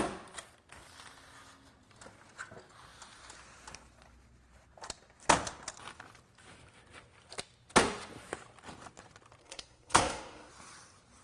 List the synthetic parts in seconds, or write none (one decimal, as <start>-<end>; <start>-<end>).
9.4-10.5